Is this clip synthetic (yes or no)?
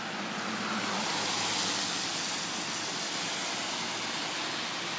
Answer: no